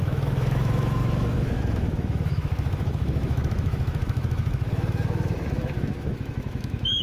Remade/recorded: remade